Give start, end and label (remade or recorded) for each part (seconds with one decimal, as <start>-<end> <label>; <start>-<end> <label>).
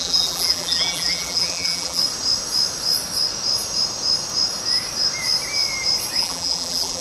0.0-2.0 remade; 2.0-6.2 recorded; 6.2-7.0 remade